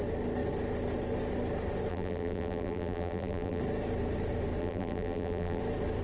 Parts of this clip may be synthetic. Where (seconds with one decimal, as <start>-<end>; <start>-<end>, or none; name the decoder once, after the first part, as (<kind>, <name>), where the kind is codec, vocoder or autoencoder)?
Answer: 1.9-3.6 (vocoder, BigVGAN v2); 4.6-5.6